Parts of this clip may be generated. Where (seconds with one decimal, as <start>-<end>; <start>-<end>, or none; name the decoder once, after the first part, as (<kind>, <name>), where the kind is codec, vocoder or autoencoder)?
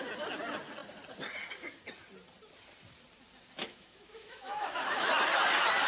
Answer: 3.6-5.1 (autoencoder, DAC-VAE)